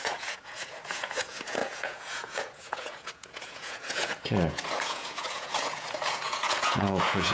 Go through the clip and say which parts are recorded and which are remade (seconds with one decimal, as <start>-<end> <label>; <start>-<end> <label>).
0.0-7.3 remade